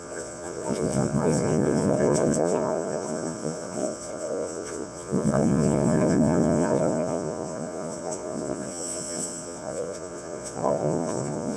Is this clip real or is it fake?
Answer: fake